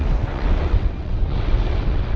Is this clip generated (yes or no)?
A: yes